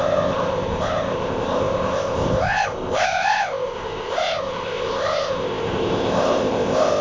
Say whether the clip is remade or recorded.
remade